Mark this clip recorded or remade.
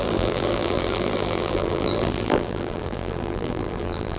remade